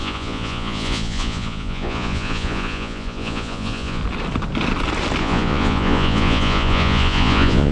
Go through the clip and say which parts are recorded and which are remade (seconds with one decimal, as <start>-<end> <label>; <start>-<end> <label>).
0.0-4.0 remade; 4.0-5.2 recorded; 5.2-7.7 remade